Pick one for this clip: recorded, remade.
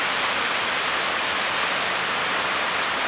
recorded